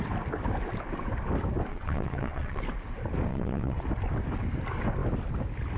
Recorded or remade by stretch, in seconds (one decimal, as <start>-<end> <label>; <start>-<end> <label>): 0.0-1.7 recorded; 1.7-2.6 remade; 2.6-3.3 recorded; 3.3-3.8 remade; 3.8-5.8 recorded